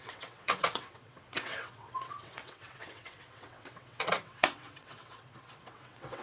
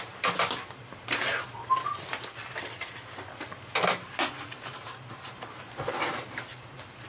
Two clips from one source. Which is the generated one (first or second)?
first